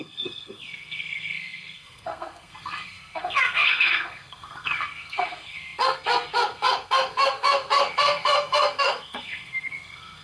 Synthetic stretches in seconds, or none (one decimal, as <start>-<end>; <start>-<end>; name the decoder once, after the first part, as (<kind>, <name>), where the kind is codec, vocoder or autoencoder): 0.0-10.2 (codec, SNAC)